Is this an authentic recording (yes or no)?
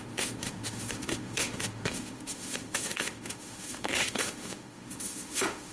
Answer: no